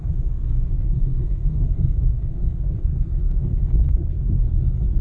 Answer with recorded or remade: remade